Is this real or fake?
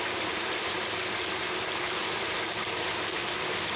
real